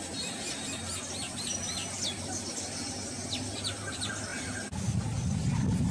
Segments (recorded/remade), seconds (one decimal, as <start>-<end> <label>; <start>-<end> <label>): 0.0-5.9 recorded